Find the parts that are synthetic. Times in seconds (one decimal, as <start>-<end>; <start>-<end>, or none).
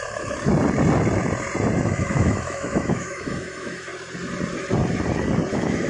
0.0-0.5; 1.8-3.9; 5.5-5.9